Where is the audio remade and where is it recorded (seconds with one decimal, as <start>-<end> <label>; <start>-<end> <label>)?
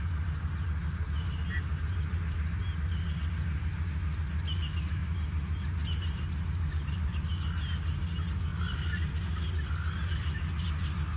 0.0-0.8 recorded; 0.8-2.6 remade; 2.6-11.2 recorded